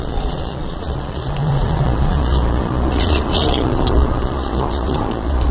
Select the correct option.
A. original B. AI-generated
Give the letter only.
B